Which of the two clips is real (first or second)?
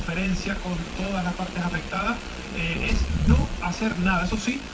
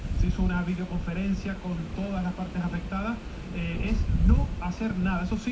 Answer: second